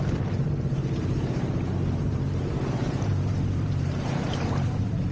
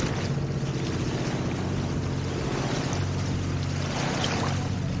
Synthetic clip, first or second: first